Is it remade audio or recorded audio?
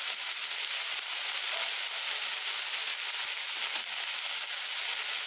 recorded